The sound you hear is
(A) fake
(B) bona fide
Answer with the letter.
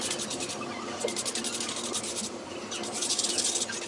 B